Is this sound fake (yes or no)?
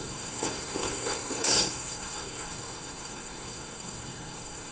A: yes